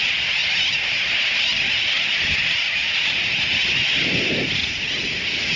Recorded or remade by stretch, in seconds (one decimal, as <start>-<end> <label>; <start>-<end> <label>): 0.0-5.6 recorded